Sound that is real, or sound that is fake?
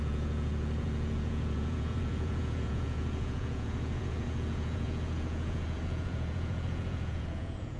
fake